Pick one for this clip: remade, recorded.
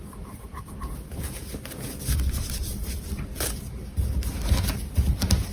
recorded